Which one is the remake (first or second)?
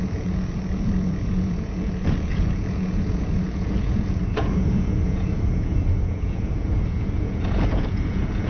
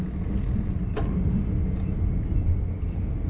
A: first